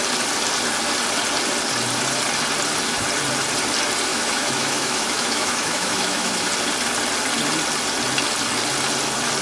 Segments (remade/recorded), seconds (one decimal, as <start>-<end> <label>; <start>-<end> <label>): 0.0-4.1 recorded; 4.1-6.5 remade; 6.5-9.4 recorded